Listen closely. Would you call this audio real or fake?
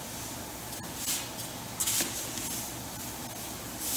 real